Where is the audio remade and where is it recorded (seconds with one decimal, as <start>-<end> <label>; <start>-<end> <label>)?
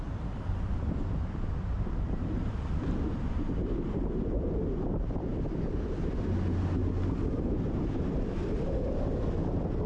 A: 0.0-9.9 recorded